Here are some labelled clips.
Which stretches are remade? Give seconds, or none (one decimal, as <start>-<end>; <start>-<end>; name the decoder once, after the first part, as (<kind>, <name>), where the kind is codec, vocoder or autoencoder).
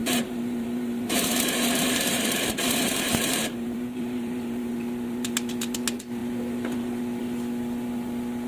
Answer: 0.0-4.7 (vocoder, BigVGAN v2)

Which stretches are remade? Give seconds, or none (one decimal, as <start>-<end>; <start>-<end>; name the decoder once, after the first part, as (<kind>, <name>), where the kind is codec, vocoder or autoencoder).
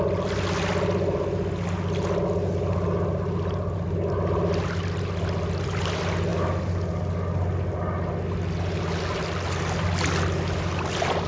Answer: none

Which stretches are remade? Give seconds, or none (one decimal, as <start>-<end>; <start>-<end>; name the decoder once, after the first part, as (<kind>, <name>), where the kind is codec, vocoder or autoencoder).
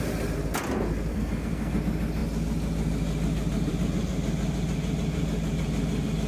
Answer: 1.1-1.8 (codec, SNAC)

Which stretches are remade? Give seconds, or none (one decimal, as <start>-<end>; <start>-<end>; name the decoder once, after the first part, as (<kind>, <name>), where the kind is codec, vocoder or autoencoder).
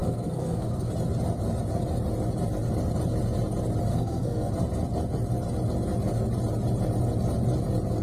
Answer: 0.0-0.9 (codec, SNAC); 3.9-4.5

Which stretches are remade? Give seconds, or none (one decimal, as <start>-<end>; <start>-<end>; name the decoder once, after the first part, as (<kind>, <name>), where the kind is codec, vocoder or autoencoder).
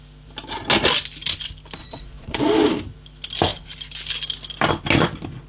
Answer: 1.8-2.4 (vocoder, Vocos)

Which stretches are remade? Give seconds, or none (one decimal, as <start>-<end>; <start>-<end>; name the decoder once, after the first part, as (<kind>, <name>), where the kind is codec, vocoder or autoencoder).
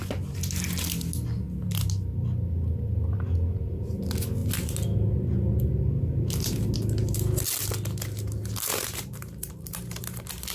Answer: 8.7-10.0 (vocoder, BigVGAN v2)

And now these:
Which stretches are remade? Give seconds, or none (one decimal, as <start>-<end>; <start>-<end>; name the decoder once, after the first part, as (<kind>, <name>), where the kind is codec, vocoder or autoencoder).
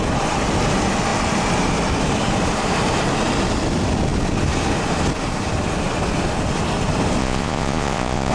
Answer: 7.2-8.3 (vocoder, Vocos)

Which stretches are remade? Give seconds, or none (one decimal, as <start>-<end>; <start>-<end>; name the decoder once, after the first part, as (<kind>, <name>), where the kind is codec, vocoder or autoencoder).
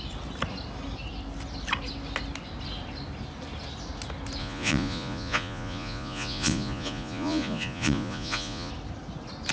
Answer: 4.4-8.7 (vocoder, Vocos)